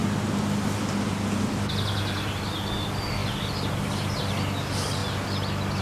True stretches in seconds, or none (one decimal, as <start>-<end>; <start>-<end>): 0.0-5.8